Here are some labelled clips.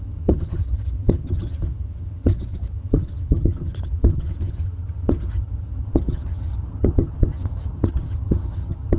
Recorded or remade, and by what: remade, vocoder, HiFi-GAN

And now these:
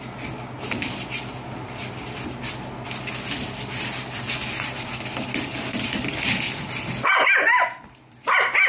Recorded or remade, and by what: recorded